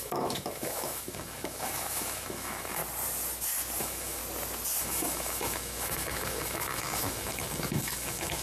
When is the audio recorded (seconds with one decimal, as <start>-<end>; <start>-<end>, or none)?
2.8-3.8; 4.2-4.8